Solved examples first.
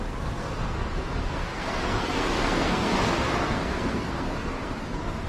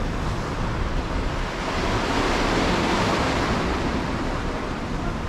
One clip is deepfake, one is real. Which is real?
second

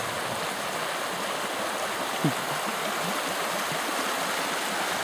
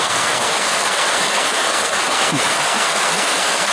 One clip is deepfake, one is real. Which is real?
first